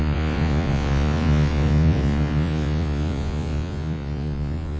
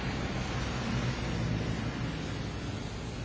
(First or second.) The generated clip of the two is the first